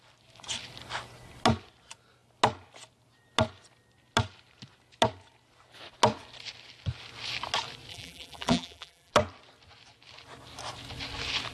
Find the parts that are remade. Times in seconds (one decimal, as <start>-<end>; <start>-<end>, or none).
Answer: 7.9-9.1